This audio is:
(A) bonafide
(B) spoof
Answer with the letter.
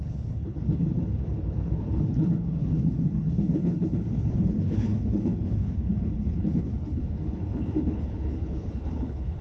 B